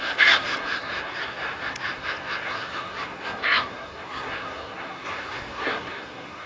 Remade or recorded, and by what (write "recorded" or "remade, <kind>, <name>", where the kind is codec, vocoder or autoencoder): remade, codec, SNAC